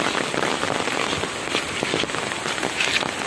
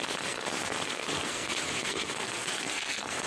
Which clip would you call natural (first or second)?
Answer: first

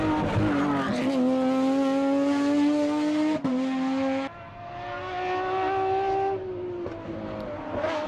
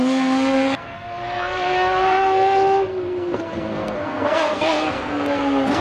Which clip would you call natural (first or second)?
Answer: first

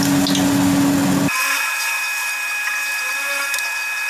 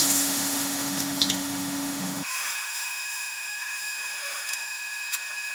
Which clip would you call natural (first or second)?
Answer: first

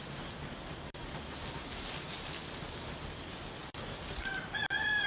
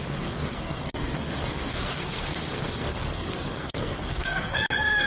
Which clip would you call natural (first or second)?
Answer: first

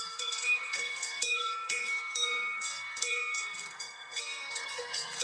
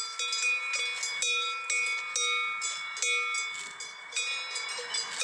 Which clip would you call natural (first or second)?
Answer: second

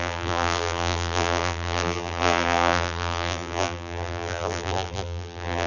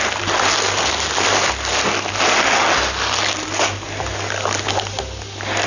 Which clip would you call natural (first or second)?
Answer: second